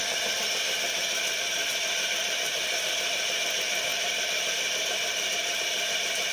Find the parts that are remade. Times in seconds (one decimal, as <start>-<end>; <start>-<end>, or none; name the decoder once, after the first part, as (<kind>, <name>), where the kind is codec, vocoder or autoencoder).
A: 3.9-5.6 (vocoder, BigVGAN v2)